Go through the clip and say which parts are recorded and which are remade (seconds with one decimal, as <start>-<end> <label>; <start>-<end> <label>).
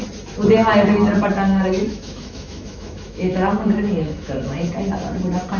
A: 0.0-1.3 recorded; 1.3-4.7 remade; 4.7-5.6 recorded